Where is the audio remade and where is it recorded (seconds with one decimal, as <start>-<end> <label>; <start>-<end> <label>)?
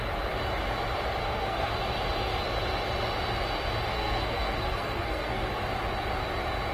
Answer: 0.0-1.2 recorded; 1.2-1.7 remade; 1.7-3.9 recorded; 3.9-5.5 remade; 5.5-6.7 recorded